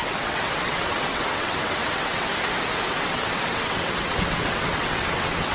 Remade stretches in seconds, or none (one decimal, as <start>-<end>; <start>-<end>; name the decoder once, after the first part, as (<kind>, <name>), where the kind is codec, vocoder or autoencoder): 0.0-2.3 (vocoder, WaveNeXt); 2.9-5.5